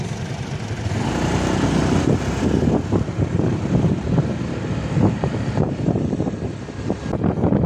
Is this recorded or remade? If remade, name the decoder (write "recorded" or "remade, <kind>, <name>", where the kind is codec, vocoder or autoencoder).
recorded